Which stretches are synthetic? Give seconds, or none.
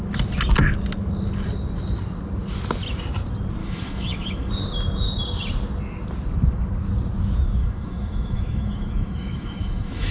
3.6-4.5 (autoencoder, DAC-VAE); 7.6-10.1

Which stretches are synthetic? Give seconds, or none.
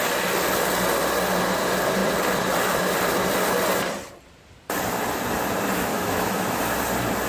5.9-6.6 (autoencoder, DAC-VAE)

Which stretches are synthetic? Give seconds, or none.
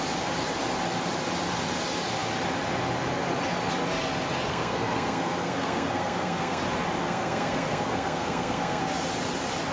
4.5-6.6 (codec, SNAC); 7.0-8.8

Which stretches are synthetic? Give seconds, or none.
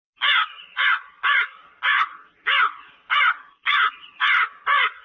none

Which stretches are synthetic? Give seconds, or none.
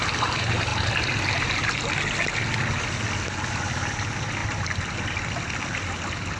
none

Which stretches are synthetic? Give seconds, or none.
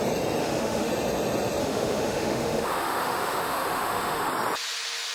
0.4-0.9 (autoencoder, DAC-VAE); 1.6-4.3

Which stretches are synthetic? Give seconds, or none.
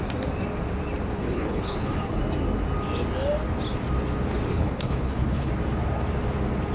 1.1-2.2 (codec, HILCodec); 4.5-5.5